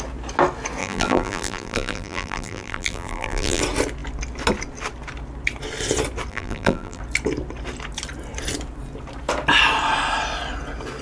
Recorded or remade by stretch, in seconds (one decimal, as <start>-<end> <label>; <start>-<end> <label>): 0.0-0.8 recorded; 0.8-3.6 remade; 3.6-6.3 recorded; 6.3-7.0 remade; 7.0-11.0 recorded

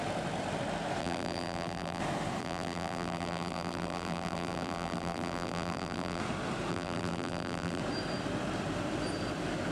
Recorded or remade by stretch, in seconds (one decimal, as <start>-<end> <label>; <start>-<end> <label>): 0.0-1.0 recorded; 1.0-2.0 remade; 2.0-2.4 recorded; 2.4-6.2 remade; 6.2-6.7 recorded; 6.7-7.8 remade; 7.8-9.7 recorded

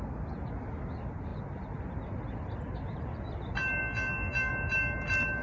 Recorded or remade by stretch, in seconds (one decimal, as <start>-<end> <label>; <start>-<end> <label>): 0.0-3.8 recorded; 3.8-4.5 remade; 4.5-5.4 recorded

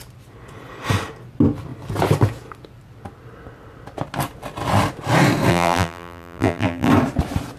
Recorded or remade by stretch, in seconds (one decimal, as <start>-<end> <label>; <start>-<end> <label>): 0.0-5.5 recorded; 5.5-6.9 remade; 6.9-7.6 recorded